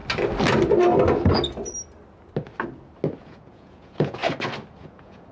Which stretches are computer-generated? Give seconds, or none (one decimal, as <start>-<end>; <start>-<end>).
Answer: 3.2-4.2; 4.8-5.3